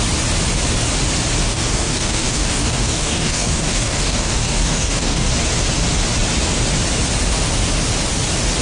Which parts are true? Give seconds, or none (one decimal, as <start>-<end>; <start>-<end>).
0.0-1.4; 5.3-8.6